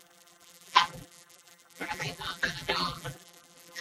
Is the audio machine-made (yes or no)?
yes